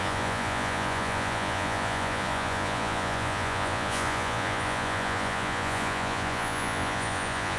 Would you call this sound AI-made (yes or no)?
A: yes